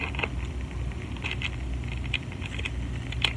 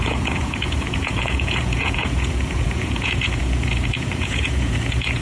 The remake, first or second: second